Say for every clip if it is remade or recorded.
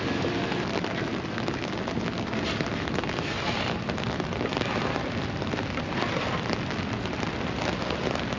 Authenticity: recorded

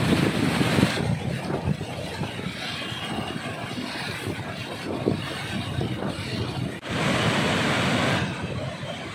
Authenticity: recorded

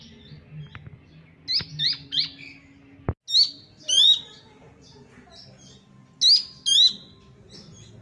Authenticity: recorded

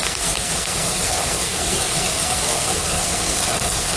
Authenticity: remade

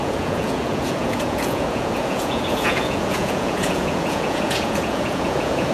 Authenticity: remade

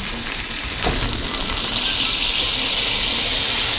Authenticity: recorded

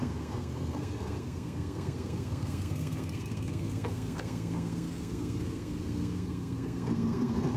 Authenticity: remade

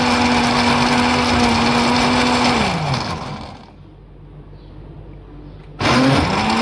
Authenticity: recorded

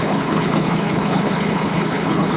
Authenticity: remade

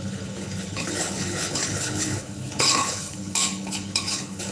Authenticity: remade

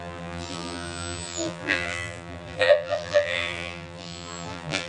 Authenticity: remade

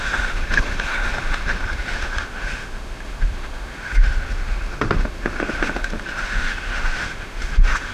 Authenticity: remade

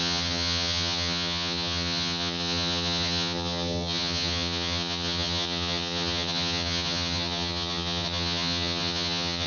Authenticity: remade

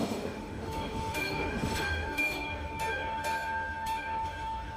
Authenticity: remade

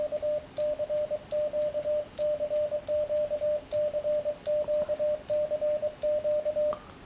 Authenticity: recorded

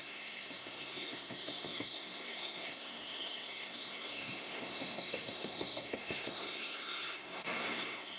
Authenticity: remade